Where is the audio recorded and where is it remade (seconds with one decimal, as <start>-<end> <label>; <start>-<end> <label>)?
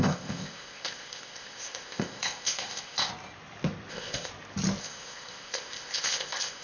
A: 0.0-3.1 remade; 3.1-3.9 recorded; 3.9-4.3 remade; 4.3-4.8 recorded; 4.8-6.6 remade